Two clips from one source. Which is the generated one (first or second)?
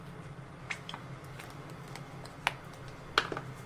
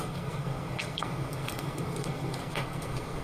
second